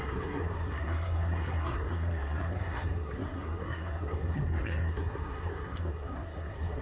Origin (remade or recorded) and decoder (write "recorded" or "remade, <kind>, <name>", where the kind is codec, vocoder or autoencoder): remade, codec, SNAC